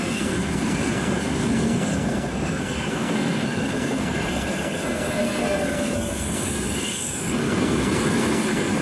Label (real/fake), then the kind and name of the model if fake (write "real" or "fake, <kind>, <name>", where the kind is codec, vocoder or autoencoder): fake, codec, SNAC